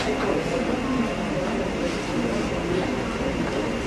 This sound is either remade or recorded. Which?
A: recorded